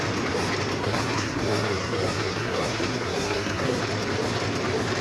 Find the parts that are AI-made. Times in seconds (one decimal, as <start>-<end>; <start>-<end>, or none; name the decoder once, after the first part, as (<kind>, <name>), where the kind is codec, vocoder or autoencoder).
0.8-3.8 (codec, SNAC)